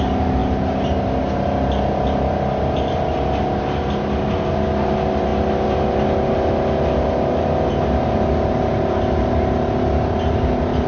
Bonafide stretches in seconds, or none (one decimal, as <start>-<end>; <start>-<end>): 0.0-10.9

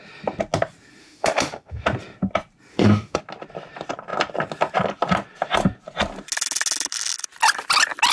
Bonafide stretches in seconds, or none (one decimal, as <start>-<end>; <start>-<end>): 0.0-1.0; 1.8-2.7; 3.2-8.1

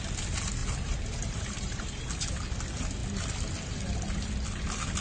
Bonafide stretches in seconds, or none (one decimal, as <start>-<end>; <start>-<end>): 0.0-0.6; 2.0-5.0

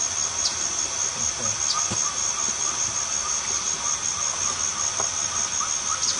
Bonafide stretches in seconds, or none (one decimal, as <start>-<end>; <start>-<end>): 0.0-6.2

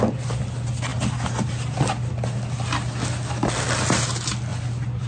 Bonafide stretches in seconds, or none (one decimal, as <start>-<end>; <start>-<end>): 0.0-5.1

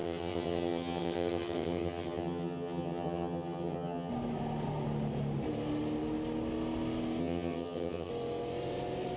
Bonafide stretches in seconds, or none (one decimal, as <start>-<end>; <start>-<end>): 4.1-7.2; 8.1-9.2

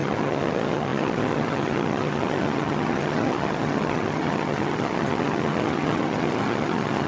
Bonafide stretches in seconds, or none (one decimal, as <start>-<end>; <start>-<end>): none